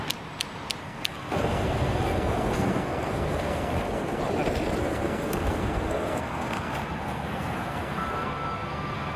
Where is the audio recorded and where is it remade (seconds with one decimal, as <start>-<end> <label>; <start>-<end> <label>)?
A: 0.0-0.8 recorded; 0.8-4.2 remade; 4.2-4.8 recorded; 4.8-9.2 remade